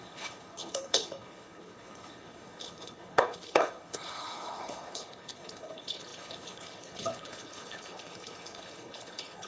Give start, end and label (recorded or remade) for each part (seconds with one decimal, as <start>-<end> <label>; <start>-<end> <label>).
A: 0.0-9.5 remade